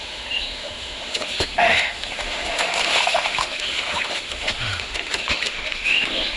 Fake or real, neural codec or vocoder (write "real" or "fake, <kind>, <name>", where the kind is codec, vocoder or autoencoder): fake, autoencoder, DAC-VAE